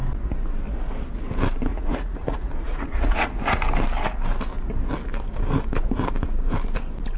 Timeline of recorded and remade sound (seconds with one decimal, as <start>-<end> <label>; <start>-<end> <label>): 0.0-1.7 recorded; 1.7-3.3 remade; 3.3-7.2 recorded